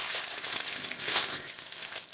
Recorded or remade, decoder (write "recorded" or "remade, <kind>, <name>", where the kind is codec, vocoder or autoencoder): remade, codec, ZipCodec